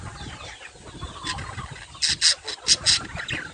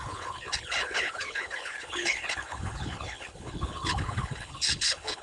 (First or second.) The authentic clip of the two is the first